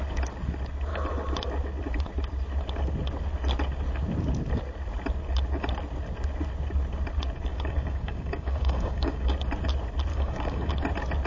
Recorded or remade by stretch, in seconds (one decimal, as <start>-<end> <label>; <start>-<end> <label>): 0.0-7.5 recorded; 7.5-9.3 remade; 9.3-10.1 recorded; 10.1-10.7 remade; 10.7-11.3 recorded